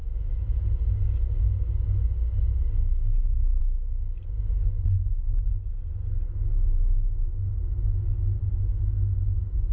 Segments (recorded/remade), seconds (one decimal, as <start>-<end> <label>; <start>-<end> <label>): 0.0-0.6 remade; 0.6-9.7 recorded